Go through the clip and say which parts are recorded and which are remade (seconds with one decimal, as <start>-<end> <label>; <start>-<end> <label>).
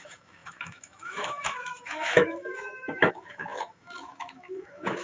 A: 0.0-5.0 remade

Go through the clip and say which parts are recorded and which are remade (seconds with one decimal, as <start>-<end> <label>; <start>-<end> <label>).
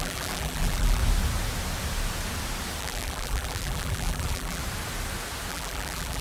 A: 0.0-1.0 remade; 1.0-2.8 recorded; 2.8-4.6 remade; 4.6-5.5 recorded; 5.5-6.2 remade